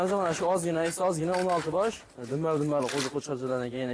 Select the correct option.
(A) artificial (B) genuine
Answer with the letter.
B